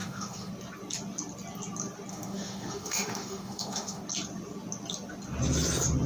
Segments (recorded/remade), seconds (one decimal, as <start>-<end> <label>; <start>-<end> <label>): 0.0-0.5 remade; 0.5-2.1 recorded; 2.1-4.0 remade; 4.0-6.1 recorded